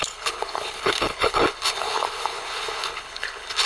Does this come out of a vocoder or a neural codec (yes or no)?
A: yes